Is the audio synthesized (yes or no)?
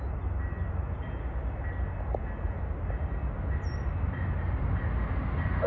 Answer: no